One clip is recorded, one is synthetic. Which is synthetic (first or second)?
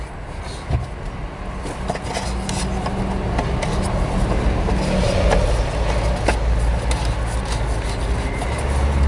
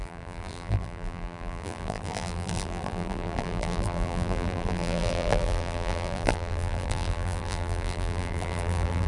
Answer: second